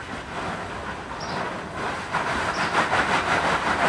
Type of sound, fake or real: real